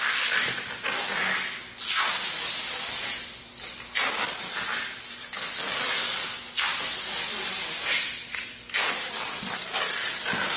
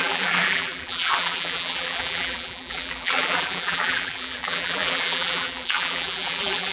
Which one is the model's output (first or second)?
second